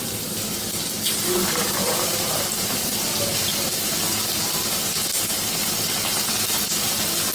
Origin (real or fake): real